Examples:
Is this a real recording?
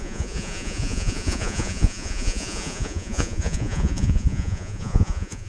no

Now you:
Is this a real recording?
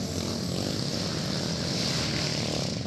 yes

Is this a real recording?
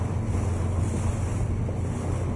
yes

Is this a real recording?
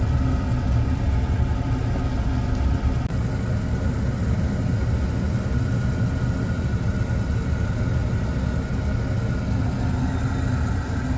yes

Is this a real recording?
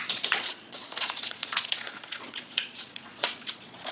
no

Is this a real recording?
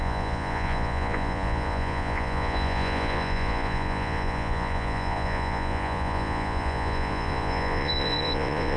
no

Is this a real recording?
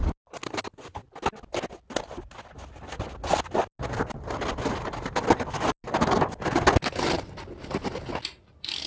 yes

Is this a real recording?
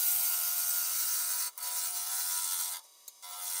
yes